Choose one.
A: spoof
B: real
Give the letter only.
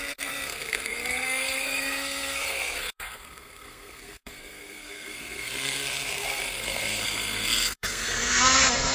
A